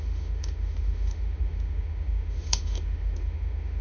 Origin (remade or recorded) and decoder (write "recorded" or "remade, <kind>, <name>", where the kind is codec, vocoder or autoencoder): remade, autoencoder, DAC-VAE